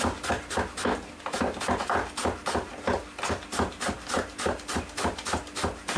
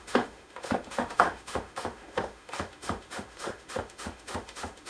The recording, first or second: first